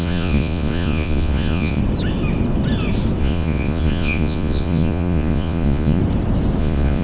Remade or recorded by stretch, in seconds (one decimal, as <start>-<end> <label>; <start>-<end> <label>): 0.0-1.8 remade; 1.8-3.2 recorded; 3.2-6.0 remade; 6.0-6.6 recorded; 6.6-7.0 remade